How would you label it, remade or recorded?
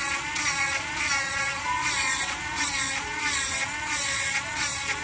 remade